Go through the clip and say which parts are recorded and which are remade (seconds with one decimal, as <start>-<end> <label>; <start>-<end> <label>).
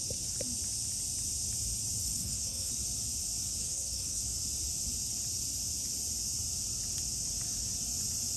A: 0.0-2.0 recorded; 2.0-2.7 remade; 2.7-3.6 recorded; 3.6-4.2 remade; 4.2-8.4 recorded